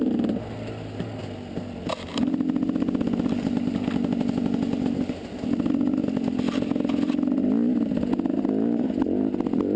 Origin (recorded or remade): recorded